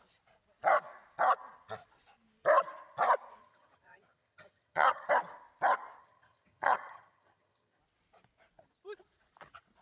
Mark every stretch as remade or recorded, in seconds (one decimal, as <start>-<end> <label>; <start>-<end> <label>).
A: 0.0-3.4 recorded; 3.4-5.1 remade; 5.1-6.0 recorded; 6.0-7.8 remade; 7.8-9.8 recorded